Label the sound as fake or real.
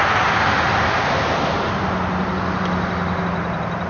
real